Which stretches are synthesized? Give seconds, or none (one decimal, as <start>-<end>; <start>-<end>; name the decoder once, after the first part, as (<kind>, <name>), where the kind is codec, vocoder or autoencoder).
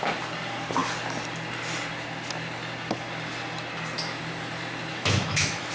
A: 4.9-5.7 (autoencoder, DAC-VAE)